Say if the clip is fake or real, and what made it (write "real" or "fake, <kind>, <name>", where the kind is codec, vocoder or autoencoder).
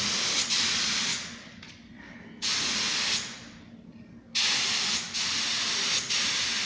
real